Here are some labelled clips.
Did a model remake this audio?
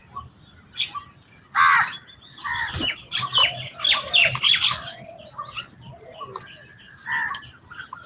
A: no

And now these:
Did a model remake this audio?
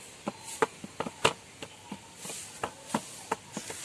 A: no